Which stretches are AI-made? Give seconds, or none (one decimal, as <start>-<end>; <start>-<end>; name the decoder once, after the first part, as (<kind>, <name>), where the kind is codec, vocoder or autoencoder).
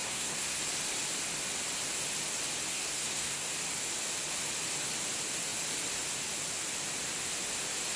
0.0-0.6 (codec, SNAC); 2.7-3.5